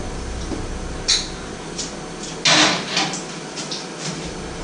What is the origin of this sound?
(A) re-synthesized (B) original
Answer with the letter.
B